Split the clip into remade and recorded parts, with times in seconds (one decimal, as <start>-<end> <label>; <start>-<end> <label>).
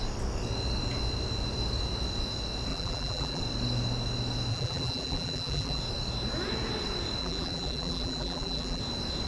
0.0-2.7 recorded; 2.7-3.4 remade; 3.4-4.5 recorded; 4.5-5.8 remade; 5.8-7.2 recorded; 7.2-8.8 remade; 8.8-9.3 recorded